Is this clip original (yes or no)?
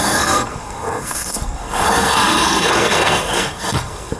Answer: no